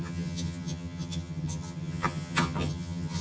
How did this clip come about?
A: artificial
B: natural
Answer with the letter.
A